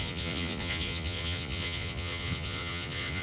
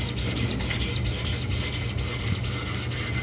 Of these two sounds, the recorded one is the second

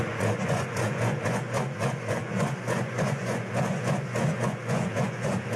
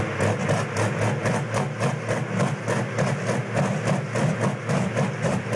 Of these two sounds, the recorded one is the second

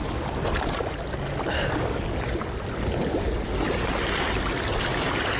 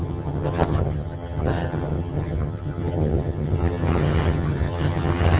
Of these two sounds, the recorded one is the first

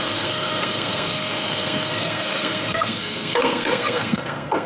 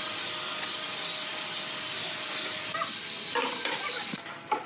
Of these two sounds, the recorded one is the second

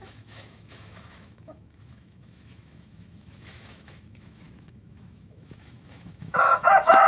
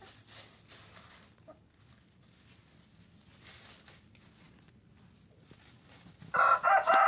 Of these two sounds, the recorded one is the second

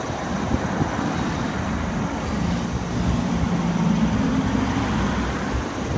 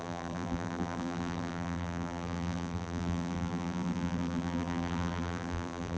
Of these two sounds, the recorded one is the first